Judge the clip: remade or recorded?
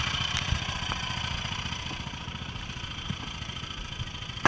remade